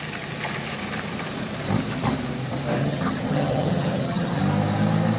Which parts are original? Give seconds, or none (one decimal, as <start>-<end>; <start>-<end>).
0.0-2.8; 4.4-5.2